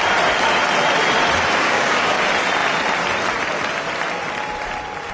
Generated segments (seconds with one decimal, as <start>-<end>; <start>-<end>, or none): 1.6-2.2